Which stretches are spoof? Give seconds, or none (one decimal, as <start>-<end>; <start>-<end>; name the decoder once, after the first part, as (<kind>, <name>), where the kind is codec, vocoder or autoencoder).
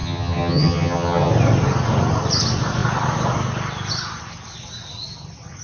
0.0-1.3 (vocoder, HiFi-GAN)